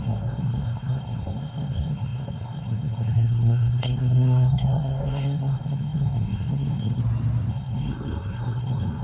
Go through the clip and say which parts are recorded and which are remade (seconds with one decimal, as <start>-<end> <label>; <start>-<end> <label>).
0.0-7.0 remade; 7.0-7.5 recorded; 7.5-9.0 remade